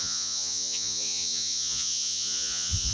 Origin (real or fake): fake